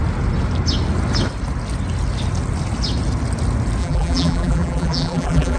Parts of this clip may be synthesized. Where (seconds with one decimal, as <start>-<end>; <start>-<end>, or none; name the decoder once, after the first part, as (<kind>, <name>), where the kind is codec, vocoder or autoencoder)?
3.8-5.6 (vocoder, BigVGAN v2)